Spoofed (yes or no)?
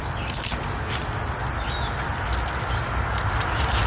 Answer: no